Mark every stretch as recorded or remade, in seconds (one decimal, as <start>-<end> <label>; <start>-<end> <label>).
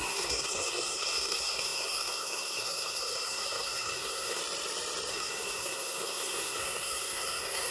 0.0-4.4 remade; 4.4-5.1 recorded; 5.1-7.7 remade